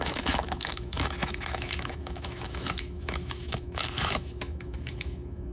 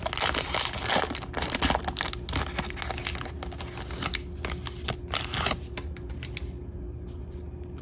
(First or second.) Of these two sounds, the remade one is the first